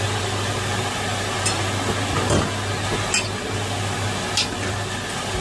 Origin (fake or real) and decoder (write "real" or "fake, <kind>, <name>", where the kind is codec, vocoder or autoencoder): real